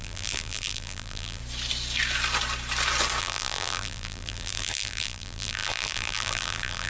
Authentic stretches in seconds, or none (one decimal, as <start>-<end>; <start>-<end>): 1.4-3.2